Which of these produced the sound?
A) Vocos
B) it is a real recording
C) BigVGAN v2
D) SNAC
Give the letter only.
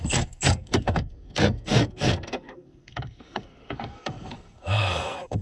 D